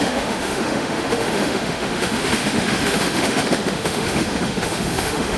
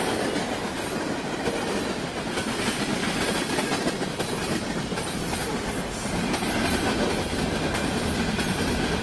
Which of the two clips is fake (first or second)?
first